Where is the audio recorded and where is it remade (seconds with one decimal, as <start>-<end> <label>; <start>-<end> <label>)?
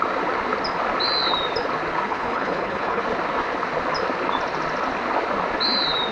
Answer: 0.0-2.1 recorded; 2.1-3.0 remade; 3.0-6.1 recorded